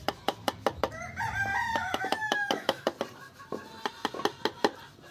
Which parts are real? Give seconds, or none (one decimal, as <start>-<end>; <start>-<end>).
0.0-1.8; 2.9-5.1